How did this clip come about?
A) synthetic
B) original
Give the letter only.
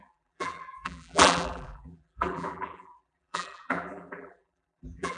A